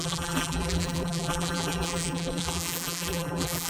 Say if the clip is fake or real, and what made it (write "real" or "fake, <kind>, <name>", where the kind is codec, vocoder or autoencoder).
fake, vocoder, BigVGAN v2